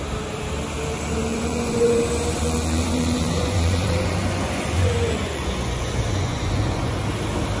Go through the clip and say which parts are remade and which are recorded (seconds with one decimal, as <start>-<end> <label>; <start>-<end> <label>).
0.0-1.3 recorded; 1.3-2.0 remade; 2.0-2.4 recorded; 2.4-7.0 remade; 7.0-7.6 recorded